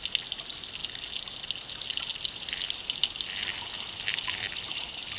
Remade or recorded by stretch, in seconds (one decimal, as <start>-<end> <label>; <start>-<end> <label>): 0.0-5.2 recorded